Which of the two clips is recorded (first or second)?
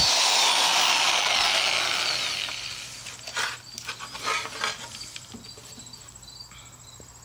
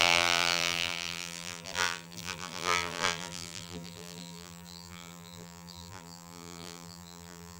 first